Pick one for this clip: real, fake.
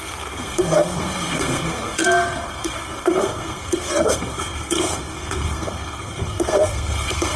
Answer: fake